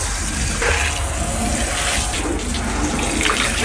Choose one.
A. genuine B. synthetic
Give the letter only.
A